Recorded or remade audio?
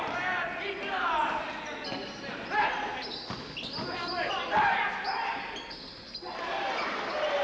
recorded